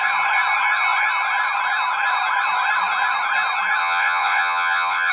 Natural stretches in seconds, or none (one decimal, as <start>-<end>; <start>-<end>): 0.0-3.8